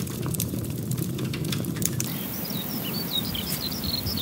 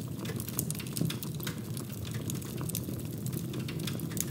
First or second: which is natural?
second